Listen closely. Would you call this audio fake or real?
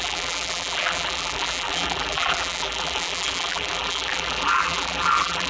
fake